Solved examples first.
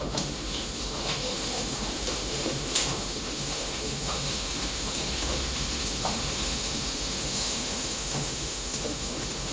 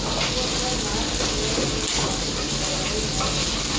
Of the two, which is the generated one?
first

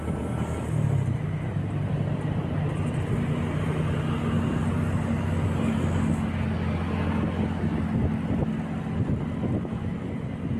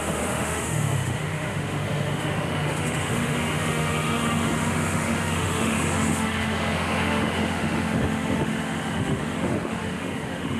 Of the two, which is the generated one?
second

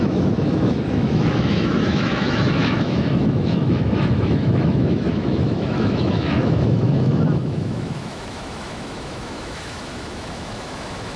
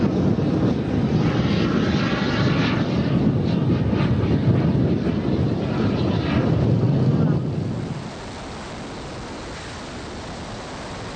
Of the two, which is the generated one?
first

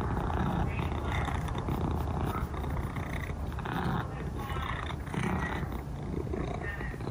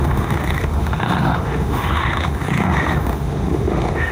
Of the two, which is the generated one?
second